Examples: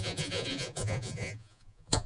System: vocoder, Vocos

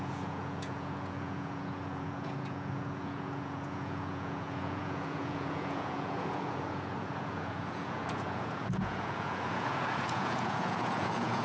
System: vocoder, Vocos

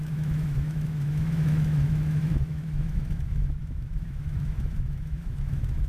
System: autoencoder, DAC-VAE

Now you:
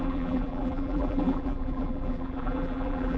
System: vocoder, BigVGAN v2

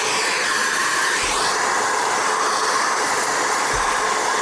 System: none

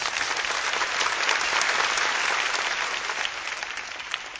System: none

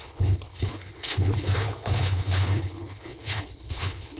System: codec, HILCodec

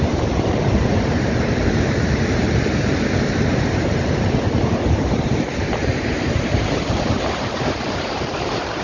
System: vocoder, BigVGAN v2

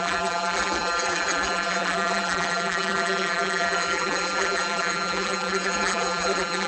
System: vocoder, BigVGAN v2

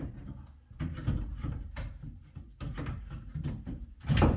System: vocoder, BigVGAN v2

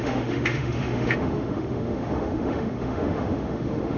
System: autoencoder, DAC-VAE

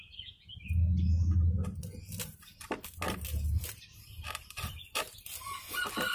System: none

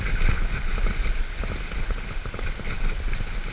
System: none